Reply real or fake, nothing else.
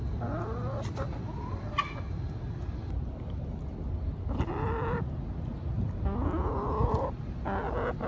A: real